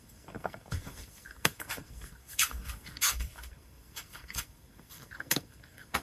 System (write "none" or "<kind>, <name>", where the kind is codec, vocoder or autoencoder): codec, SNAC